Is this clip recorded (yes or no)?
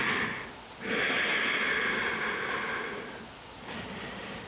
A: yes